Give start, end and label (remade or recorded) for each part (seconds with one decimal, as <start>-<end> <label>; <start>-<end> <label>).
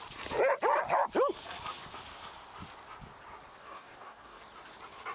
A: 0.0-3.6 recorded; 3.6-4.4 remade; 4.4-5.1 recorded